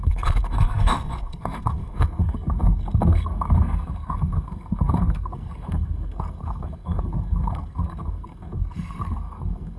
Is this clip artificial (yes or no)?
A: yes